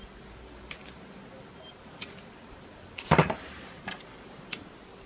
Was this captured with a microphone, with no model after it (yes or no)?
yes